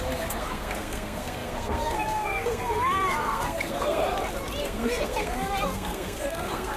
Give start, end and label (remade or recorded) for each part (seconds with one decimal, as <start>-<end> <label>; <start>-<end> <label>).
0.0-4.0 remade; 4.0-4.6 recorded; 4.6-6.8 remade

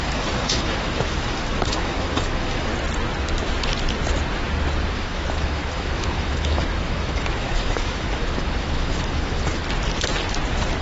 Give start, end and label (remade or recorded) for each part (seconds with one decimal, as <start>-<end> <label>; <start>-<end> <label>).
0.0-2.7 remade; 2.7-4.9 recorded; 4.9-9.6 remade; 9.6-10.8 recorded

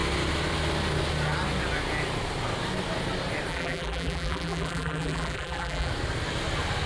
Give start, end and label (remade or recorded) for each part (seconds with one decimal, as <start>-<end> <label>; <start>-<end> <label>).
0.0-3.5 recorded; 3.5-5.9 remade; 5.9-6.9 recorded

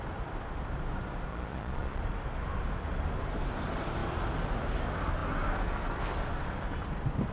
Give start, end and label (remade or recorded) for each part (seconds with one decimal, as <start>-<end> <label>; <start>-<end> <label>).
0.0-1.3 recorded; 1.3-2.0 remade; 2.0-7.3 recorded

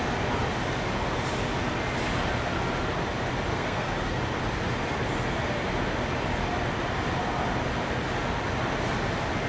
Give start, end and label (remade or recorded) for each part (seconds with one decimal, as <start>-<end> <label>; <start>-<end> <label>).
0.0-3.5 recorded; 3.5-4.2 remade; 4.2-9.5 recorded

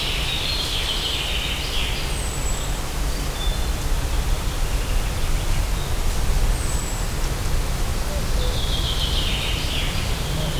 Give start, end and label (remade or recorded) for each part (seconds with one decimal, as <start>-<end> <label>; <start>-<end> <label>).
0.0-10.6 recorded

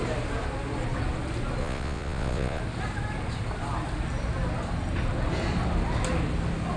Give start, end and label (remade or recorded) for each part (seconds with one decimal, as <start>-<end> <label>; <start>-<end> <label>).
0.0-1.6 recorded; 1.6-2.6 remade; 2.6-6.8 recorded

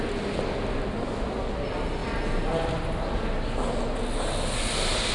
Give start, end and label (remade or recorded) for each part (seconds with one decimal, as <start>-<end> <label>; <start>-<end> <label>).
0.0-5.1 recorded